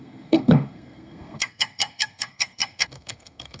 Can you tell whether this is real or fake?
fake